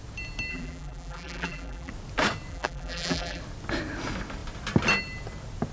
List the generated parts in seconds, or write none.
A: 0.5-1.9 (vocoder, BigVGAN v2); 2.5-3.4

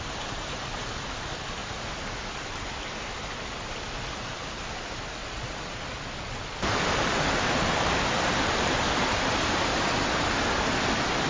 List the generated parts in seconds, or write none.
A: none

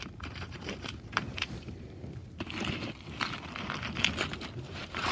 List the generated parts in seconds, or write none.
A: 0.0-2.2 (vocoder, BigVGAN v2); 4.6-5.1